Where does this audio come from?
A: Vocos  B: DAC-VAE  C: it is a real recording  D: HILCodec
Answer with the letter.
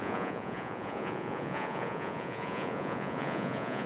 A